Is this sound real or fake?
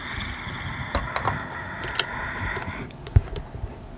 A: real